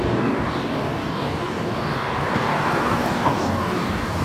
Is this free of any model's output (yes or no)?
no